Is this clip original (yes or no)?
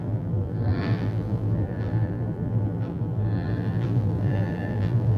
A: no